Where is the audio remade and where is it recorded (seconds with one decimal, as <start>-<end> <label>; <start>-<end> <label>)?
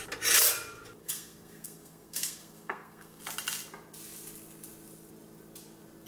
0.0-1.0 recorded; 1.0-3.2 remade; 3.2-6.1 recorded